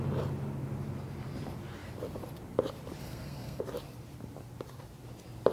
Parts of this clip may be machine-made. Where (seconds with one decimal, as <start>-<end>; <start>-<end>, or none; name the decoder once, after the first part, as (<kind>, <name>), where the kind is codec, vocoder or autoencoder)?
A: 3.0-3.6 (codec, SNAC)